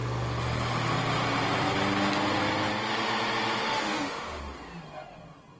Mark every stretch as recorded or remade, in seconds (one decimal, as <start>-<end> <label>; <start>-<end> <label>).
0.0-3.6 recorded; 3.6-4.4 remade; 4.4-5.6 recorded